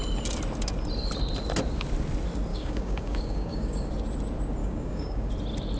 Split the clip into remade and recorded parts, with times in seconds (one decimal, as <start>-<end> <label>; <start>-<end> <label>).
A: 0.0-2.5 recorded; 2.5-3.9 remade; 3.9-4.6 recorded; 4.6-5.3 remade; 5.3-5.8 recorded